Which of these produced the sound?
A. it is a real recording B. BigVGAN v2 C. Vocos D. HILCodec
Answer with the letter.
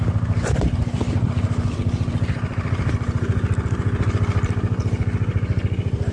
A